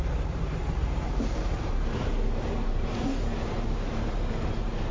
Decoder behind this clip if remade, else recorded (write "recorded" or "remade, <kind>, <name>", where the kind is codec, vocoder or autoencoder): remade, vocoder, BigVGAN v2